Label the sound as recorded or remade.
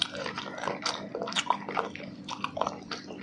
recorded